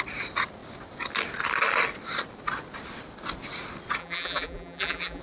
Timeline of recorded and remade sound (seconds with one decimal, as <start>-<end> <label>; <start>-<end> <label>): 0.0-4.0 recorded; 4.0-5.2 remade